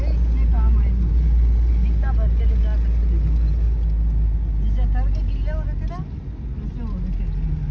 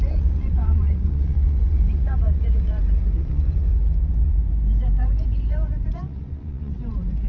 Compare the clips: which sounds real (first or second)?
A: first